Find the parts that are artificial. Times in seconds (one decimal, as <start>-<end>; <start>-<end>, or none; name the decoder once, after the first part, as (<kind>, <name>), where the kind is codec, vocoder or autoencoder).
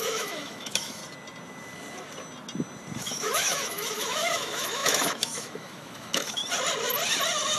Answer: 0.0-1.0 (autoencoder, DAC-VAE); 3.0-6.4